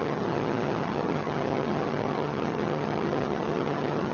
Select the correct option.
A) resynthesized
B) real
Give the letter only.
A